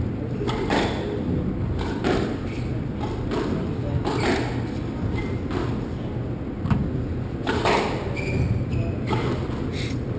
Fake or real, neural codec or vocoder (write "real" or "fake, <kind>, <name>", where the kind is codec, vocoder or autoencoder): real